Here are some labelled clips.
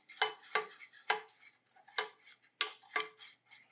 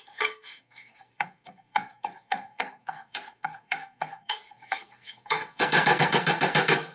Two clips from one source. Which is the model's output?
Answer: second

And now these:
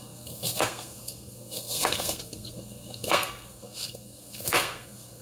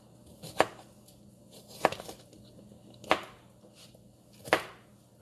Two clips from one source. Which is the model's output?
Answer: first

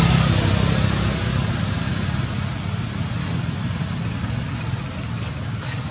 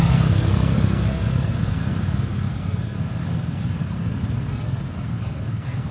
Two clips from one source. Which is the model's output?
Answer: second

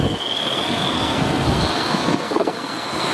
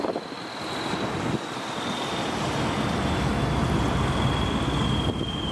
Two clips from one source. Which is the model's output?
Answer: first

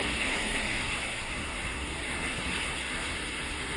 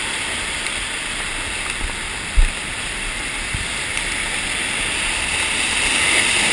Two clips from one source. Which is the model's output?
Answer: first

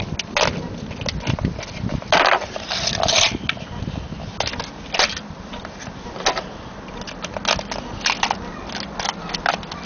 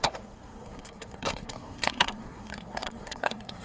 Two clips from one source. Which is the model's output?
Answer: second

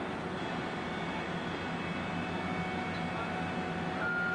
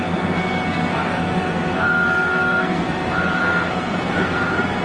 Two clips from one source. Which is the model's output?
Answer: second